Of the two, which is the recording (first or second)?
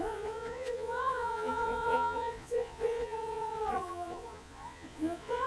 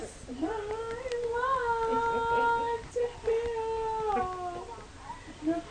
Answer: second